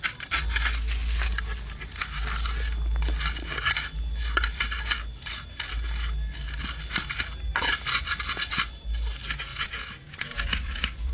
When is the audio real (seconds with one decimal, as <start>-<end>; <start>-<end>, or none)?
0.0-9.5